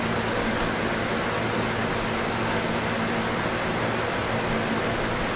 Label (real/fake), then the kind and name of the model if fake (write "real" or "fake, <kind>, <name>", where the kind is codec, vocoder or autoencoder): real